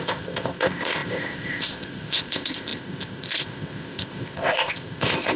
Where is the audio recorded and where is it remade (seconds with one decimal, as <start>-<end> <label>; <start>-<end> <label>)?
0.0-5.4 remade